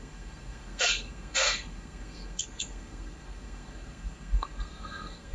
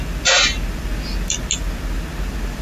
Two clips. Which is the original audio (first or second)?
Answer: second